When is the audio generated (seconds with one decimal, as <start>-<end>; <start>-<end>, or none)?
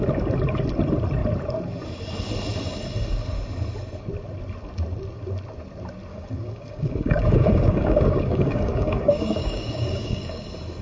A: 6.1-10.4